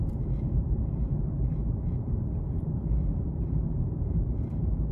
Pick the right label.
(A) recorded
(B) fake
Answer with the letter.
B